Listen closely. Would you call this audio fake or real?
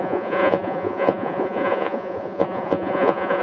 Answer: fake